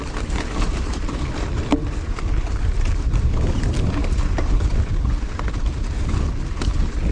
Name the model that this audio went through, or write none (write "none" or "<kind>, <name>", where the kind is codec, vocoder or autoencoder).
none